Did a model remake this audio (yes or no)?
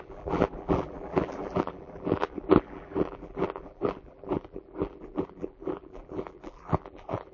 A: yes